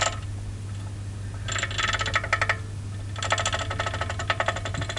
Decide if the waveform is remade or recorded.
recorded